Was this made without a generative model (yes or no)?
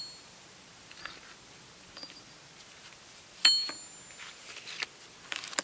yes